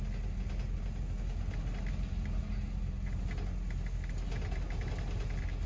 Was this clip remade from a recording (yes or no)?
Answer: no